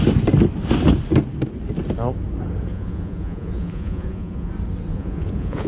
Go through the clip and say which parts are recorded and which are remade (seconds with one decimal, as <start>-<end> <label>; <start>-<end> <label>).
0.0-2.7 recorded; 2.7-4.5 remade; 4.5-4.9 recorded; 4.9-5.7 remade